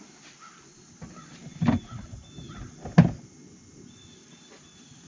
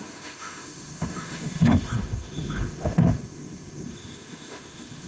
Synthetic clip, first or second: second